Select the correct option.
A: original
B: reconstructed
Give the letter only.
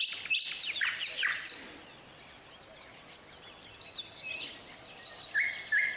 A